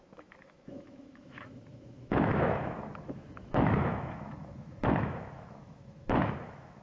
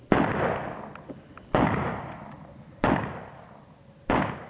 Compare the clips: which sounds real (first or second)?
second